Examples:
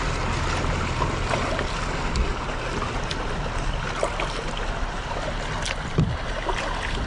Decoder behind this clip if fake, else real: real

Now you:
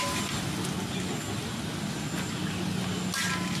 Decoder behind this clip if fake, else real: real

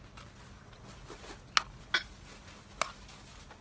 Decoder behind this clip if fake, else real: real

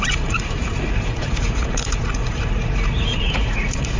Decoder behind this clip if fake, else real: fake, vocoder, Vocos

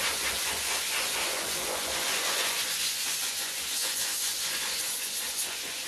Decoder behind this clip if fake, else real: fake, vocoder, Vocos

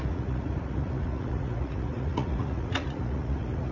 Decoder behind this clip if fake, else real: fake, vocoder, Vocos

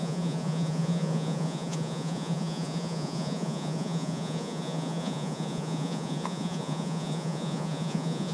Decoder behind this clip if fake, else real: fake, vocoder, Vocos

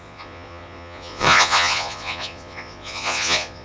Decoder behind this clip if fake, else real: fake, vocoder, Vocos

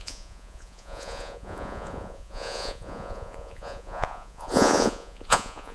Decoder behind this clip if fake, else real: fake, vocoder, Vocos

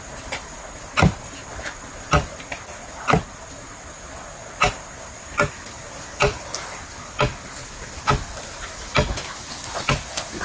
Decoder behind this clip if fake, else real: real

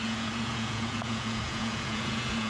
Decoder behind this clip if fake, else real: fake, vocoder, Vocos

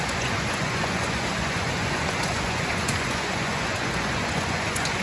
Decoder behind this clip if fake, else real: fake, vocoder, Vocos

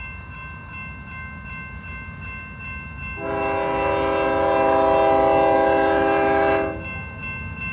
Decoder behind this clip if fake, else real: real